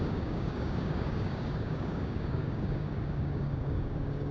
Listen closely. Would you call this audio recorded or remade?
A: remade